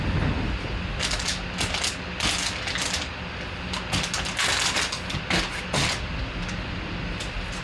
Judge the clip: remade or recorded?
recorded